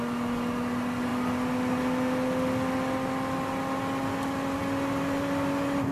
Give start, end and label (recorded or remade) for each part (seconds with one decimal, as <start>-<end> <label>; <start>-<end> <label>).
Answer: 0.0-5.9 recorded